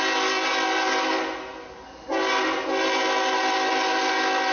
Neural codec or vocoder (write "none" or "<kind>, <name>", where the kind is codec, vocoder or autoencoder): none